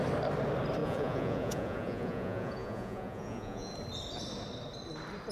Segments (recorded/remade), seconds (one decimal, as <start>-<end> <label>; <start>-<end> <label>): 0.0-0.8 recorded; 0.8-3.7 remade; 3.7-5.3 recorded